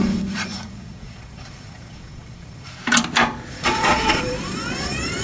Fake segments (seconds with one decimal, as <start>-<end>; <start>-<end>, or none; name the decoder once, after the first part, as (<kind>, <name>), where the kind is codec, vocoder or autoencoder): 0.0-2.8 (vocoder, Vocos); 3.5-5.2